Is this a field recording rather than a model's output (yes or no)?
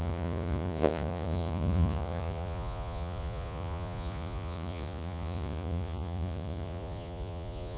no